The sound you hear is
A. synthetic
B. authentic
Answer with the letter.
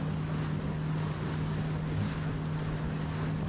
B